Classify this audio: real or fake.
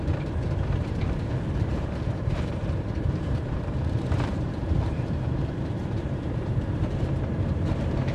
fake